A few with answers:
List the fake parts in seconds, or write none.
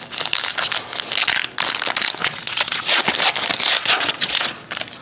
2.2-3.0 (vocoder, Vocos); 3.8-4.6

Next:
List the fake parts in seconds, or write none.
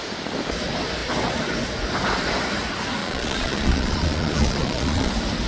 3.0-5.1 (vocoder, Vocos)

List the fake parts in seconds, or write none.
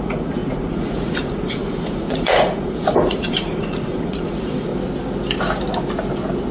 0.0-4.7 (vocoder, Vocos)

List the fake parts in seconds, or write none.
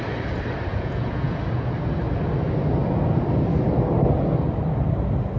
0.7-1.4 (vocoder, Vocos)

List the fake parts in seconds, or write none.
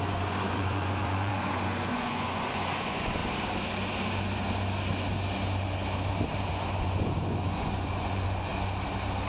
0.0-3.2 (vocoder, Vocos); 6.5-8.5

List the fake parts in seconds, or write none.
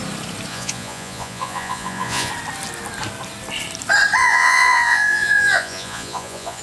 0.5-2.3 (vocoder, Vocos); 4.2-6.6